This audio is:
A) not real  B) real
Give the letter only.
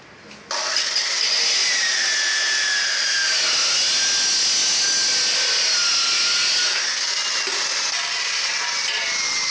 B